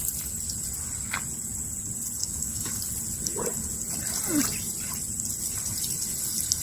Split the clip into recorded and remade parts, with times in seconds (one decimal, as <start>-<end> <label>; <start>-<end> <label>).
0.0-2.2 recorded; 2.2-2.8 remade; 2.8-6.6 recorded